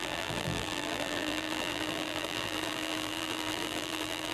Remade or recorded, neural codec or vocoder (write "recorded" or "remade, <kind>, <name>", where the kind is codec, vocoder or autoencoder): remade, vocoder, BigVGAN v2